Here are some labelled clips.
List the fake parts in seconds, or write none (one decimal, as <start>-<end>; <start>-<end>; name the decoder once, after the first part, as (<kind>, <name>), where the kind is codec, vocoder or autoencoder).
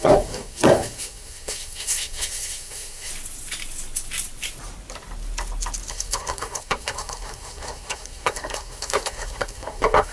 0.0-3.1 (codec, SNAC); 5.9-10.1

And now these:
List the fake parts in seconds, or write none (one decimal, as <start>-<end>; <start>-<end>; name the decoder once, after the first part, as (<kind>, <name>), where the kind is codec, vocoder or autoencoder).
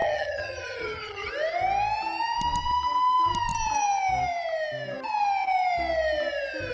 0.0-1.3 (vocoder, HiFi-GAN)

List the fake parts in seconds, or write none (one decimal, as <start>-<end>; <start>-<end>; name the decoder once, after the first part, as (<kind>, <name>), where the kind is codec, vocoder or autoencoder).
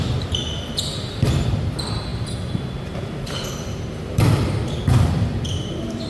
0.0-0.4 (vocoder, BigVGAN v2); 1.0-6.1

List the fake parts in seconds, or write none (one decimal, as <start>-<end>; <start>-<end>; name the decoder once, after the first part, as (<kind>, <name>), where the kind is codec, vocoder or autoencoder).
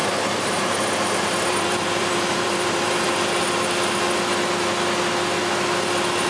0.0-3.1 (vocoder, BigVGAN v2)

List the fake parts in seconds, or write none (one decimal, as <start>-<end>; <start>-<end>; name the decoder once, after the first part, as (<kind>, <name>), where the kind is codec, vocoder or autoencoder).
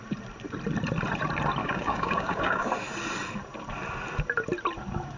1.6-2.7 (codec, DAC)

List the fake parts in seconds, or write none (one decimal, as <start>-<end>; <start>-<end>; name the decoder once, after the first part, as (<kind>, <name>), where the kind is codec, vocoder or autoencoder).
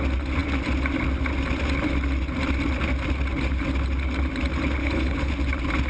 4.8-5.3 (codec, HILCodec)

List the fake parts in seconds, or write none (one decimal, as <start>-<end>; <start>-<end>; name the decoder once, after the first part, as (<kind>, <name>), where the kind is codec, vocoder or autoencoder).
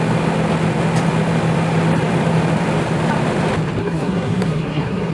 3.8-5.1 (codec, SNAC)